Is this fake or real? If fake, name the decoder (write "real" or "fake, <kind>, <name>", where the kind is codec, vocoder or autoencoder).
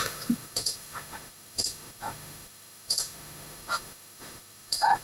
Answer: fake, autoencoder, DAC-VAE